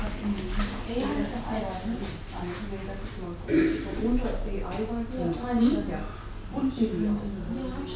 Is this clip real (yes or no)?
yes